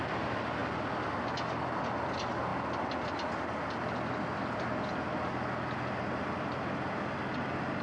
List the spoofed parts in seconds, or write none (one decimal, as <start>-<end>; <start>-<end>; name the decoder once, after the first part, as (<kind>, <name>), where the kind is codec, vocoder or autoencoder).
none